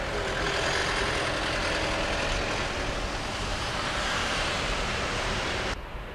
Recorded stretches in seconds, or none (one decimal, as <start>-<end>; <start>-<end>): 0.0-3.5